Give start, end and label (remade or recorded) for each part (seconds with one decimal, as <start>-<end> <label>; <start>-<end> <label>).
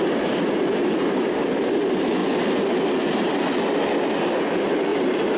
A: 0.0-5.4 recorded